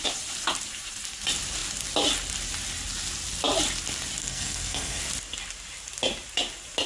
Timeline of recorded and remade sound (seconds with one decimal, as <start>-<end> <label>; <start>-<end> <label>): 0.0-4.2 recorded; 4.2-5.0 remade; 5.0-6.9 recorded